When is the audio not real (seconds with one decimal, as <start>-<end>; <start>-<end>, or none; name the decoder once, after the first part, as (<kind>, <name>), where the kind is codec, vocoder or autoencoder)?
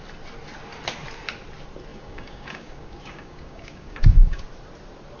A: 1.9-4.4 (codec, DAC)